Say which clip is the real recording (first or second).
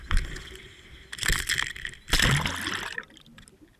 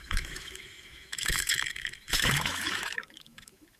first